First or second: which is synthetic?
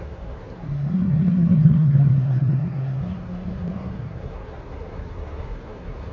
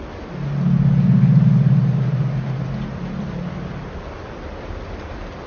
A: first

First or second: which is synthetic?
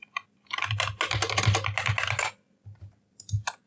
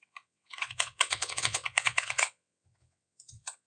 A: second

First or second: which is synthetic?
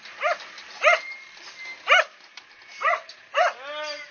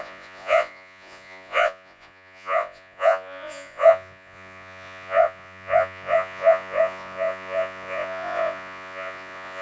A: second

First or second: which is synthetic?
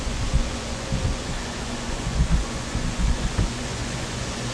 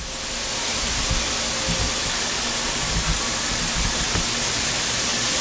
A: first